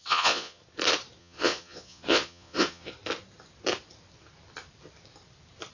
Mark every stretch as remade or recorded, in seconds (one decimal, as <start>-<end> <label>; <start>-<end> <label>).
0.0-0.6 remade; 0.6-1.2 recorded; 1.2-2.9 remade; 2.9-5.7 recorded